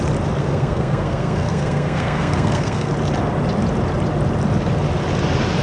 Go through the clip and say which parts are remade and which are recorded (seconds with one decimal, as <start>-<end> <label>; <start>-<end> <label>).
0.0-0.4 recorded; 0.4-2.9 remade; 2.9-5.6 recorded